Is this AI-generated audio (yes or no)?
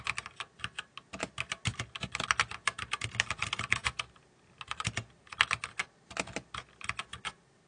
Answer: no